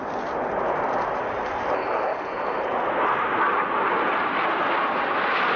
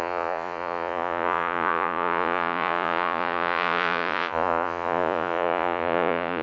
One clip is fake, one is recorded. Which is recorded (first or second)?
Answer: first